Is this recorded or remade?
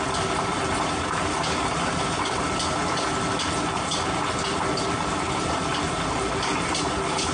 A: recorded